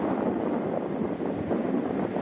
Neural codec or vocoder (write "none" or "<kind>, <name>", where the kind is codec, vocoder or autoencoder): none